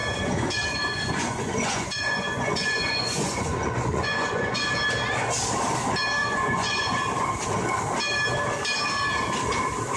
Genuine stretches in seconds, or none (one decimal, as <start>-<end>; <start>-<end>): 4.7-6.2; 7.0-10.0